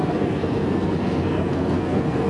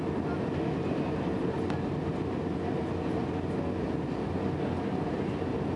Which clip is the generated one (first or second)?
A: first